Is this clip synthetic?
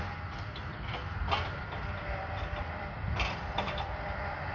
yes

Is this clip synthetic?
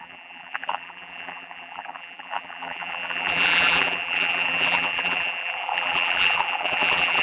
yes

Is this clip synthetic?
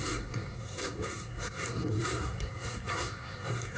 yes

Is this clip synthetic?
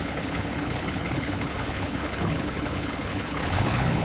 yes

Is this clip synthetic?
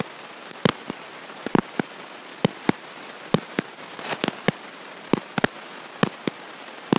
no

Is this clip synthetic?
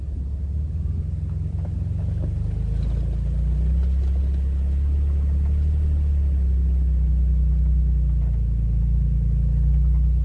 no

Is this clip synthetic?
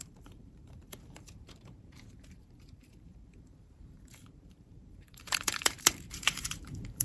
yes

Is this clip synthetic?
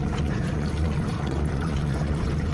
yes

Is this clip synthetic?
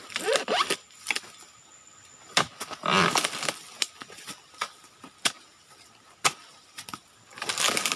no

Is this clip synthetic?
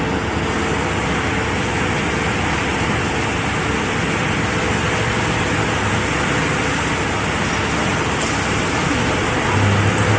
no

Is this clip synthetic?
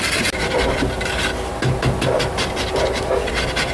no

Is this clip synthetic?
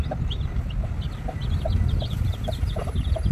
no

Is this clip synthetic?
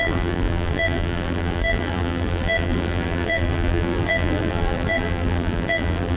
yes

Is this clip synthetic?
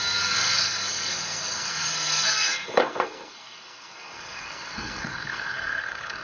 yes